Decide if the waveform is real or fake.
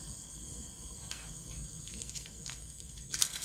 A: fake